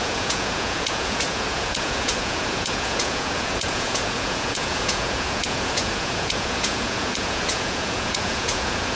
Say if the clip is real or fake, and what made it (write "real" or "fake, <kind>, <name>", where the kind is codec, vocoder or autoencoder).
fake, vocoder, Vocos